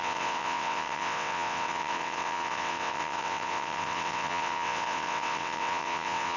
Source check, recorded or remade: remade